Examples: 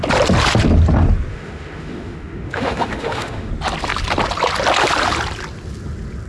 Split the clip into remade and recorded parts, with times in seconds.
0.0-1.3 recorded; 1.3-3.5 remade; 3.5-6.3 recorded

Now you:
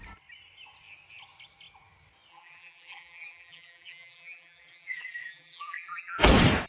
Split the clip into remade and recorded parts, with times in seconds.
0.0-2.3 recorded; 2.3-6.3 remade; 6.3-6.7 recorded